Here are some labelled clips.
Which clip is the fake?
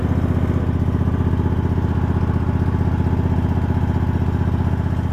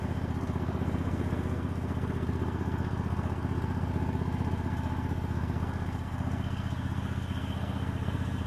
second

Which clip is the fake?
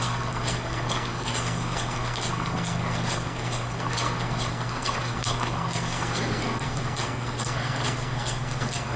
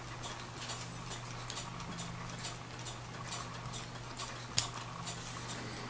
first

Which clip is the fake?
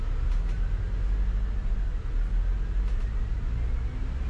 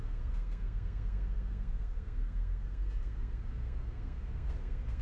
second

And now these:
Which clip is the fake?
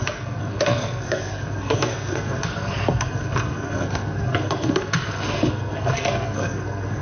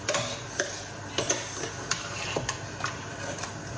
first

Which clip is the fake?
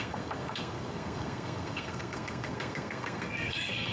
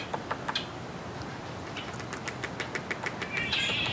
first